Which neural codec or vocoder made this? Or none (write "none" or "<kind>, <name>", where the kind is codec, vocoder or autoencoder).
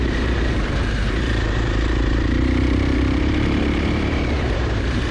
vocoder, BigVGAN v2